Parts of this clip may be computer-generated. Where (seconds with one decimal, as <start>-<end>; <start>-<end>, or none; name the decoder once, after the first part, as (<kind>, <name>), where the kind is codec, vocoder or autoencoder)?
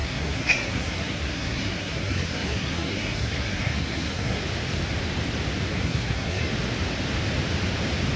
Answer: 0.0-4.4 (codec, SNAC); 5.7-6.5